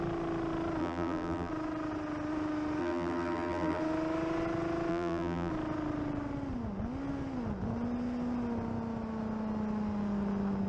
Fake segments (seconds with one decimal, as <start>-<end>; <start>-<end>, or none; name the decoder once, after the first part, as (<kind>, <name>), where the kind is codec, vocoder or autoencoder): 0.8-1.5 (vocoder, BigVGAN v2); 2.8-3.8; 4.9-5.5